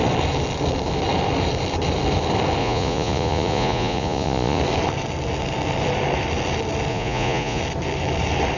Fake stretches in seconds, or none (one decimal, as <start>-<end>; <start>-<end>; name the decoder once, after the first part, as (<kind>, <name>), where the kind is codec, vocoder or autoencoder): 2.6-4.6 (vocoder, Vocos); 6.9-7.6